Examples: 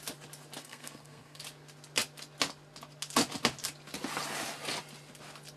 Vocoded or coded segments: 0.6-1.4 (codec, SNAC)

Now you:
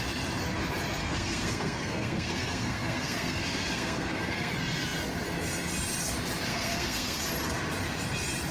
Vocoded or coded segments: 1.0-4.5 (codec, SNAC); 6.5-7.2

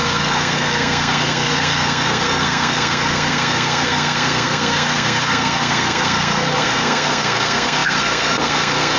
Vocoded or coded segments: 0.0-9.0 (codec, SNAC)

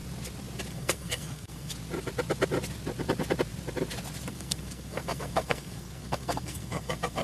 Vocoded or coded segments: 0.7-1.7 (codec, SNAC); 4.3-7.2

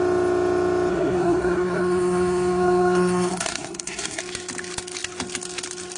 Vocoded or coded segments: 0.9-4.2 (codec, SNAC)